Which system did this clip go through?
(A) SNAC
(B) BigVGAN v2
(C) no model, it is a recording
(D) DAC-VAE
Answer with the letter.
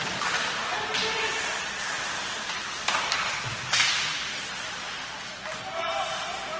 B